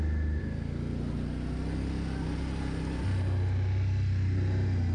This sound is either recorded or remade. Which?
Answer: recorded